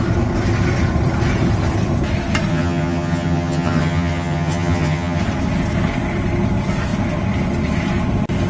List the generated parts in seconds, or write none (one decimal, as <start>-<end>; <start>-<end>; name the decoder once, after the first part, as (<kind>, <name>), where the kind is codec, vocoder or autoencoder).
2.5-5.2 (vocoder, HiFi-GAN)